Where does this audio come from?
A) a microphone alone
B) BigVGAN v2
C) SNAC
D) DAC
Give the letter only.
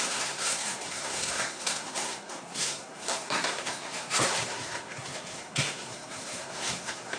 C